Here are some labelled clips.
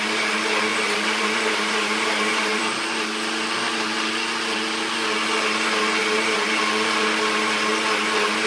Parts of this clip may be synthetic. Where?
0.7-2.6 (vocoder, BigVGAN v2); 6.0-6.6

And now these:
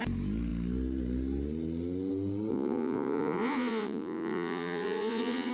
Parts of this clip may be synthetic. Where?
2.5-5.5 (vocoder, Vocos)

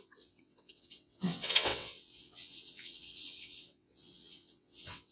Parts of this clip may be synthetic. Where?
0.0-5.1 (vocoder, WaveNeXt)